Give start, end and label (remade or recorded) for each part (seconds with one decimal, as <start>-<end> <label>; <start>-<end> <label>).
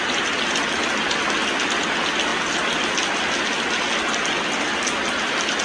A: 0.0-5.6 recorded